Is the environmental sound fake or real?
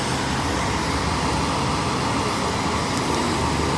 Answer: real